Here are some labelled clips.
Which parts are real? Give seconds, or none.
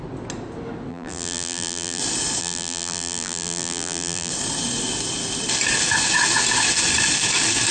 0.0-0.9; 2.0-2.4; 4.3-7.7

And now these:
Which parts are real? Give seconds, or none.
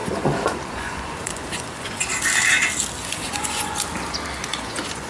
2.1-3.0; 3.8-4.5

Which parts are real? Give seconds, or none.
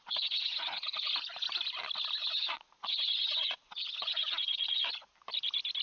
1.1-2.2; 5.1-5.8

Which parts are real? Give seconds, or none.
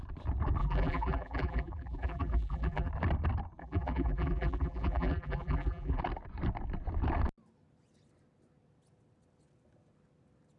0.0-0.6; 2.9-3.6; 6.0-10.6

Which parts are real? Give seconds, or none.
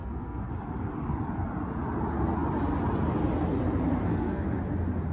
0.5-4.1; 4.6-5.1